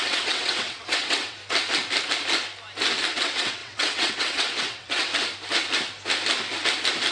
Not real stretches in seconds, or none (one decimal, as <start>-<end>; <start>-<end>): 0.0-1.4; 3.1-5.1